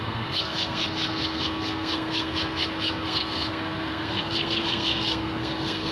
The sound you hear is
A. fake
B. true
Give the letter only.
A